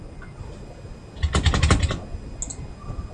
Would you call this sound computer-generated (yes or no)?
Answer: no